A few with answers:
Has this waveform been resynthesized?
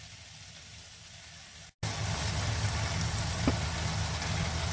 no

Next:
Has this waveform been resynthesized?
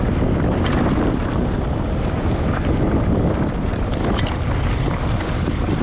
no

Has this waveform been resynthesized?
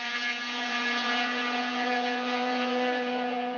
yes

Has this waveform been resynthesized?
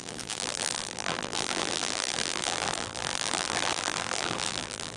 yes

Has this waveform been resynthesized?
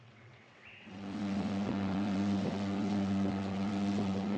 yes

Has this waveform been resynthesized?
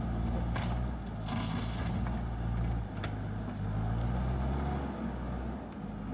no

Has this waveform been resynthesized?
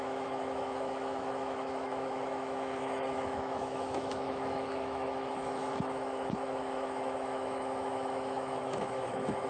yes